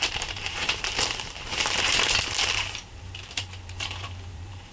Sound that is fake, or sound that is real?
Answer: fake